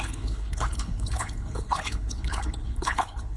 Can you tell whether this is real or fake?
fake